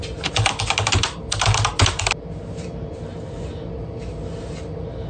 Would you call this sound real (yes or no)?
yes